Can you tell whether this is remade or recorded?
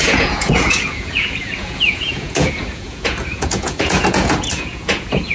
remade